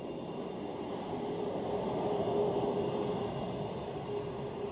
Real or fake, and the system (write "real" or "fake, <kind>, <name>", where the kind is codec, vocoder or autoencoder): real